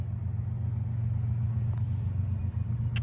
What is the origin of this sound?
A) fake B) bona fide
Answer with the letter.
B